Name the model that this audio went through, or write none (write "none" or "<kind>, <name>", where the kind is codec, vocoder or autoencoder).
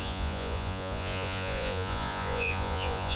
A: vocoder, Vocos